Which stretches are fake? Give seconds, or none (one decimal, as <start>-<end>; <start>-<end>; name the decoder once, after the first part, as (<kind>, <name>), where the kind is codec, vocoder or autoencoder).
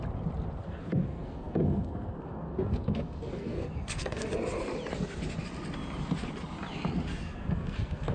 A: 0.6-4.3 (codec, SNAC); 7.1-8.1